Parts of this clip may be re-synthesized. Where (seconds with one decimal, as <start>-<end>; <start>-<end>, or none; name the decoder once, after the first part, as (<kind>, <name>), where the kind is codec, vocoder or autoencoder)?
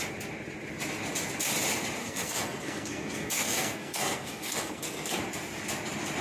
2.0-5.2 (codec, SNAC)